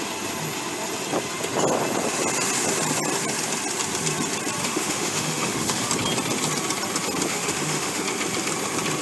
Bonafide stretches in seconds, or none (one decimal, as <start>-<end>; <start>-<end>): 0.0-4.6; 5.9-7.3; 8.0-9.0

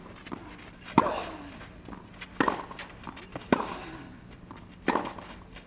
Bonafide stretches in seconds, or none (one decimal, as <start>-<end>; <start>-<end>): 0.0-5.7

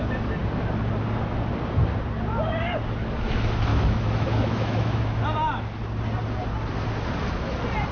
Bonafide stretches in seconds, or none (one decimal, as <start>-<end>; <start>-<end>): 0.0-3.7; 5.2-7.9

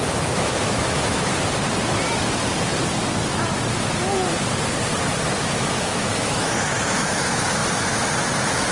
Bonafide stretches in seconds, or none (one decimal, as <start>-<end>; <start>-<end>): 1.3-5.4; 7.6-8.7